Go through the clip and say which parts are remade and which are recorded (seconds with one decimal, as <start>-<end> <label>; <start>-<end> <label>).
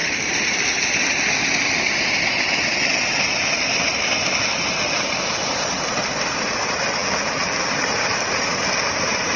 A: 0.0-7.0 recorded; 7.0-7.7 remade; 7.7-9.4 recorded